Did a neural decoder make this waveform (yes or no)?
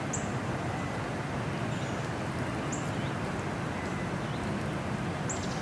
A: no